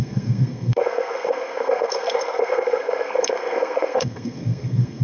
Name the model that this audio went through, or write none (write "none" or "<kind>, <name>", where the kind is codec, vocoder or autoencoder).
codec, SNAC